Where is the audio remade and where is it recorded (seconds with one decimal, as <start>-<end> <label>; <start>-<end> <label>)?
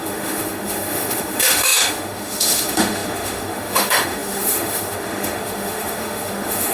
0.0-6.7 remade